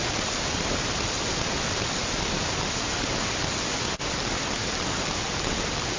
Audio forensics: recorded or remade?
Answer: recorded